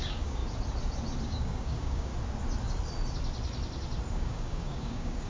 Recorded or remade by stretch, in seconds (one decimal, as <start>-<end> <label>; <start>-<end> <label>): 0.0-0.4 remade; 0.4-1.2 recorded; 1.2-2.1 remade; 2.1-4.1 recorded; 4.1-5.3 remade